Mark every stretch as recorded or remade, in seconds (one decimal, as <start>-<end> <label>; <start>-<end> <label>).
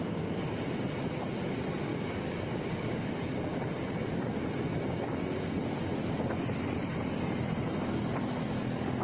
0.0-1.9 recorded; 1.9-3.1 remade; 3.1-9.0 recorded